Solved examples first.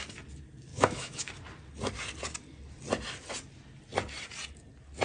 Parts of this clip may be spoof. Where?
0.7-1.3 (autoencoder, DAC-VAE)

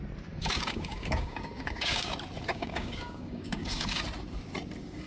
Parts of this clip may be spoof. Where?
0.4-2.1 (codec, DAC); 2.5-4.0

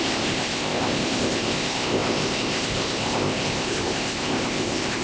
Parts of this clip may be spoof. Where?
0.0-5.0 (codec, ZipCodec)

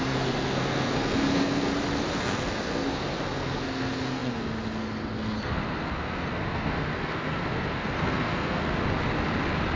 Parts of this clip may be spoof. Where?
0.0-1.7 (codec, SNAC); 2.2-8.8

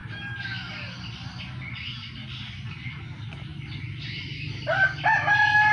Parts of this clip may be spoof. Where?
none